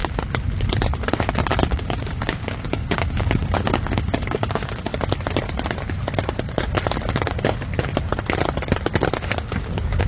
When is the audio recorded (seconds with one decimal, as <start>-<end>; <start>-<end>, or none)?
0.0-1.7; 4.9-9.4